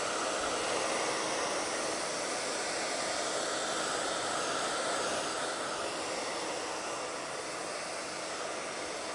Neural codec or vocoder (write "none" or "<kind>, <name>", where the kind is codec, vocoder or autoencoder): none